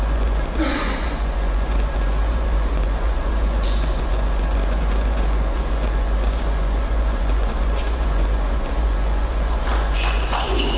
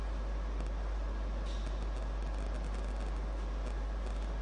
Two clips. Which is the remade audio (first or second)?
first